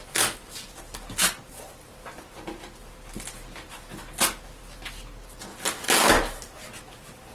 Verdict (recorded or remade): recorded